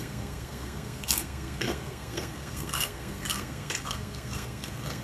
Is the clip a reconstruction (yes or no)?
yes